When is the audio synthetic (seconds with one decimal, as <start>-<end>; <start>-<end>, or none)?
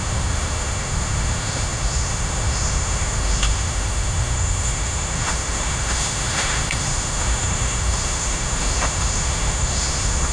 0.0-10.3